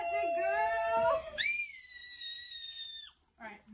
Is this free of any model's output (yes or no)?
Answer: yes